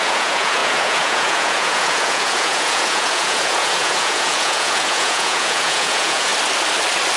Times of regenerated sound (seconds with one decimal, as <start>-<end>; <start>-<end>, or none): 0.0-6.3